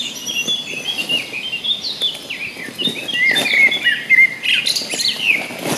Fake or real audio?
real